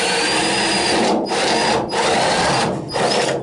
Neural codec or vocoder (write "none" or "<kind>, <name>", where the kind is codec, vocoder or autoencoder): none